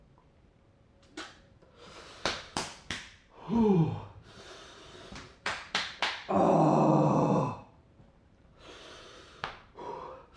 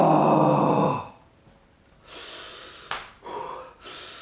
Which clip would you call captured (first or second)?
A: second